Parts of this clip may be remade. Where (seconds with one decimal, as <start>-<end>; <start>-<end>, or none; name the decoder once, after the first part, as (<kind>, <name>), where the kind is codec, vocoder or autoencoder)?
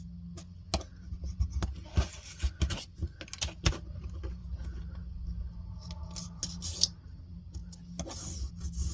none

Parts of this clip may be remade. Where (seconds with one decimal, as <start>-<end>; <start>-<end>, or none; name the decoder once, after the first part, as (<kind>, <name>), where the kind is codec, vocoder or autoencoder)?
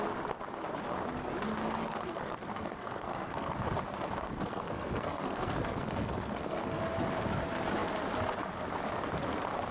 1.8-3.6 (codec, SNAC); 4.2-6.8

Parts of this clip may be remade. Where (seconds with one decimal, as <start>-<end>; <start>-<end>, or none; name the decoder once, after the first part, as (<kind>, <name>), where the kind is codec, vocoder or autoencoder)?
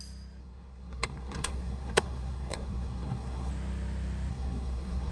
0.4-3.5 (codec, SNAC); 4.3-5.1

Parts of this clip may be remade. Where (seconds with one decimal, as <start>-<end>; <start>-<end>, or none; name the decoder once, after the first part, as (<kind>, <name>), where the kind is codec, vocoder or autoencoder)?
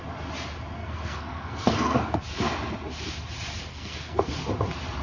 0.8-2.2 (codec, SNAC); 3.7-4.3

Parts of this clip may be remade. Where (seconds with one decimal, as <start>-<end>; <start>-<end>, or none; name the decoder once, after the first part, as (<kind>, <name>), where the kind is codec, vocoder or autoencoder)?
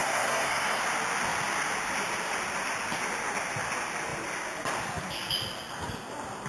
0.0-0.8 (codec, SNAC)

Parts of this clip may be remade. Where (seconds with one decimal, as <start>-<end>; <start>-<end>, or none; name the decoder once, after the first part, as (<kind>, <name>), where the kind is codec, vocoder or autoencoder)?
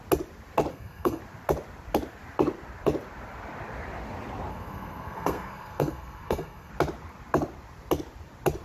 0.7-1.2 (codec, SNAC); 4.5-6.7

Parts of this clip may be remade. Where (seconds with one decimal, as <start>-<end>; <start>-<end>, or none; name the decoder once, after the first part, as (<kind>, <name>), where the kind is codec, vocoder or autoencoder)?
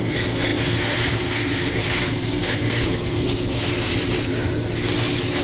0.0-3.9 (codec, SNAC)